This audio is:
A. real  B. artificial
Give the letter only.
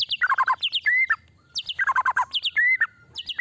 A